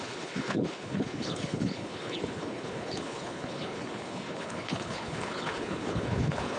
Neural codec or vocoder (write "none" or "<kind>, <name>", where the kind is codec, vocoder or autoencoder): codec, HILCodec